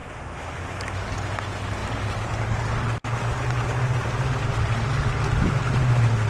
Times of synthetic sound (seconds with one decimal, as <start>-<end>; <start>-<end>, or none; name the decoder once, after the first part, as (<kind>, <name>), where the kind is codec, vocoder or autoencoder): 0.0-0.7 (autoencoder, DAC-VAE)